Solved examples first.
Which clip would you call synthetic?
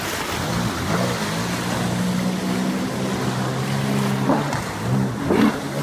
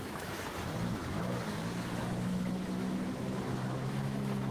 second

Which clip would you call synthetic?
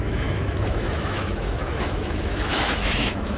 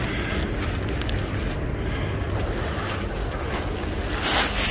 first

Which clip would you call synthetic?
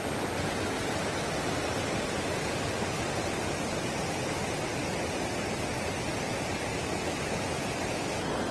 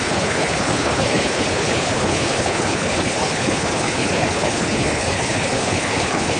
second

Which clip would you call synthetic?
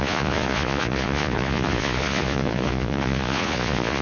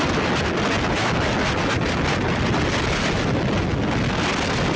first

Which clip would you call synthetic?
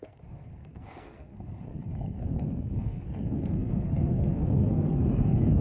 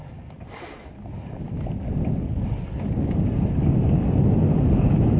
first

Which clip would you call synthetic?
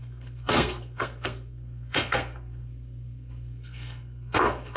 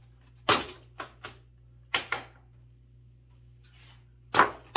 first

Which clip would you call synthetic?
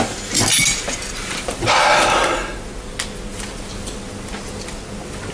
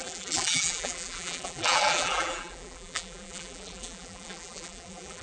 second